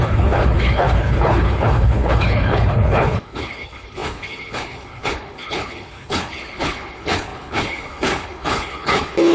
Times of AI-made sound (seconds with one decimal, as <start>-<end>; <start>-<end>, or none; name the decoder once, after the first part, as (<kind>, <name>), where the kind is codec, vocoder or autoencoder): 0.0-9.3 (codec, HILCodec)